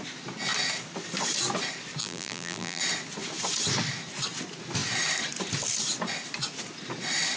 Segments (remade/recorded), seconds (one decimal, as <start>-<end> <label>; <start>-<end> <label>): 0.0-2.0 recorded; 2.0-2.8 remade; 2.8-7.4 recorded